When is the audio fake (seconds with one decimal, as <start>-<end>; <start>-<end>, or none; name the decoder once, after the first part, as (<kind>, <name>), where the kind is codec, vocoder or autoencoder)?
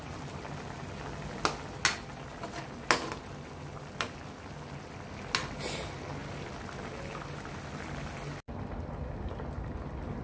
none